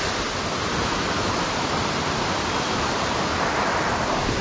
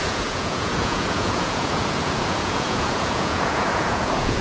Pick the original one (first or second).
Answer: first